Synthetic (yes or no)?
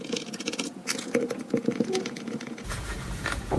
yes